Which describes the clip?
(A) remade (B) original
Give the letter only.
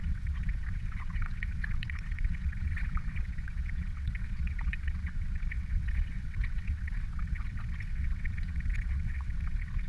A